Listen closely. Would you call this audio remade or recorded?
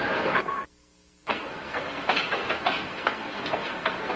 remade